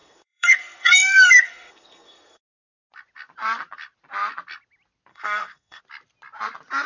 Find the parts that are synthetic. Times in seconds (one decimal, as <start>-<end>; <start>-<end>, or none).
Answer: 0.0-2.4; 5.1-5.8